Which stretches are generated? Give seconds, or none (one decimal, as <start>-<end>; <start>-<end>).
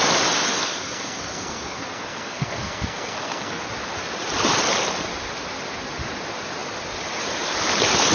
0.6-3.6